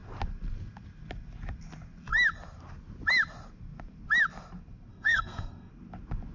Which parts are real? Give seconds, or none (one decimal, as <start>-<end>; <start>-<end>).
0.0-4.9; 5.7-6.3